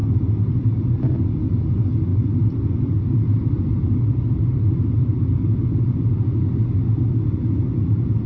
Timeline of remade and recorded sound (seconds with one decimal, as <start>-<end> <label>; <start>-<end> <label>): 0.0-2.1 recorded; 2.1-5.2 remade; 5.2-8.3 recorded